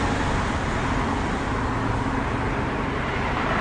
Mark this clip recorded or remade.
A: recorded